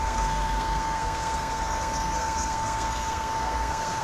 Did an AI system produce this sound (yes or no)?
yes